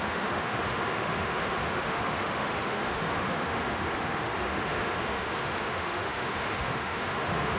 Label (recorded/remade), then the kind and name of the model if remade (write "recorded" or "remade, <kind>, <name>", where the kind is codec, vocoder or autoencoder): remade, autoencoder, DAC-VAE